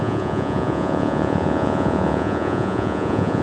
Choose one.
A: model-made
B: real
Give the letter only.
A